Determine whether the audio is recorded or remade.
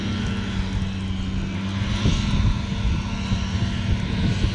recorded